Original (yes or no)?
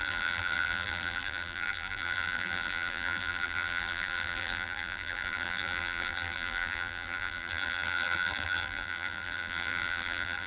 no